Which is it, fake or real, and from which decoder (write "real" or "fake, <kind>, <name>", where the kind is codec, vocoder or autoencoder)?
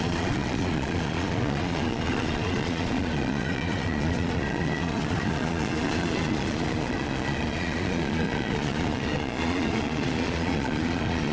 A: fake, vocoder, Vocos